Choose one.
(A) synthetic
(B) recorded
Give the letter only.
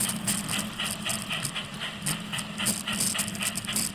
B